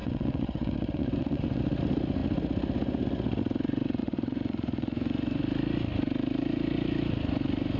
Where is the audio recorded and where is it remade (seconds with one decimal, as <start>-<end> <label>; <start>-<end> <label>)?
0.0-1.6 remade; 1.6-4.0 recorded; 4.0-5.4 remade; 5.4-7.8 recorded